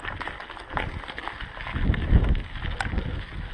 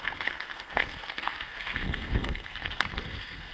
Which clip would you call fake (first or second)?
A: second